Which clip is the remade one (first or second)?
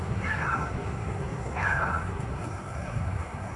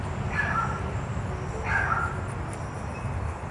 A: first